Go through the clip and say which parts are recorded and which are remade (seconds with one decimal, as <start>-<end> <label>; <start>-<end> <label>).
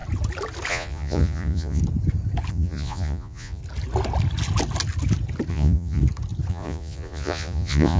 0.0-0.7 recorded; 0.7-1.8 remade; 1.8-2.5 recorded; 2.5-3.6 remade; 3.6-5.5 recorded; 5.5-6.0 remade; 6.0-6.5 recorded; 6.5-8.0 remade